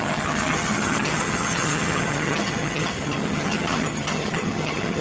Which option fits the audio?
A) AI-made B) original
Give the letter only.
A